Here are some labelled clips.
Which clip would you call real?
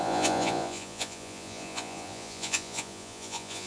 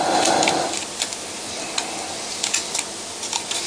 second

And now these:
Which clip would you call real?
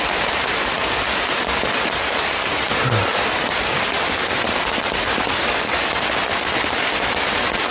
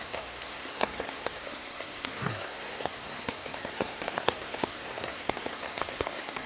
first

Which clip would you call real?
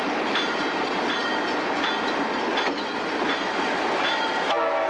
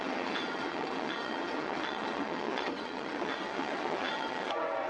first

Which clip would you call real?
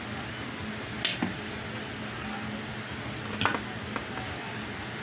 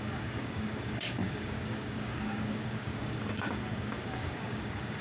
first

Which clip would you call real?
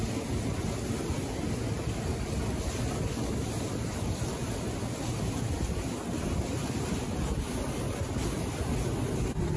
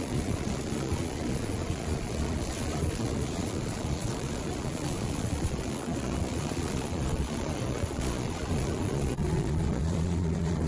first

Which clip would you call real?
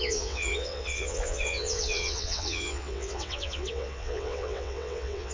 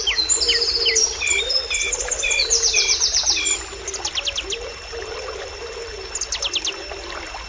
second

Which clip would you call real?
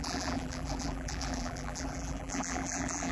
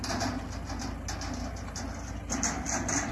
second